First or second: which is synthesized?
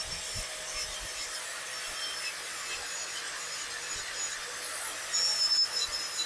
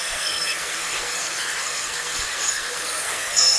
second